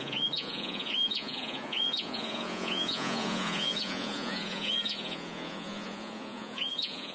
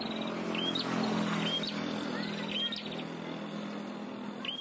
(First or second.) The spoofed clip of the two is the first